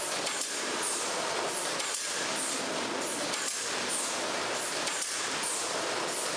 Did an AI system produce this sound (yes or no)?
yes